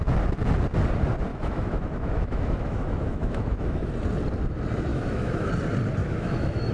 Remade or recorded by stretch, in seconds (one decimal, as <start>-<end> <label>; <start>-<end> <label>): 0.0-1.3 recorded; 1.3-3.9 remade; 3.9-4.9 recorded; 4.9-5.5 remade; 5.5-6.0 recorded; 6.0-6.7 remade

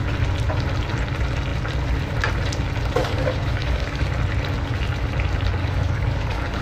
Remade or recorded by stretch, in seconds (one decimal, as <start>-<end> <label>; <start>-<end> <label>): 0.0-3.0 recorded; 3.0-4.0 remade; 4.0-5.6 recorded; 5.6-6.6 remade